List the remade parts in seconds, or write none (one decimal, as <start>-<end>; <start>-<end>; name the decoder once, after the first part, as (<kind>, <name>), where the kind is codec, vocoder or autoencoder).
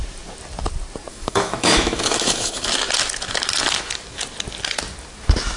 1.1-2.7 (autoencoder, DAC-VAE)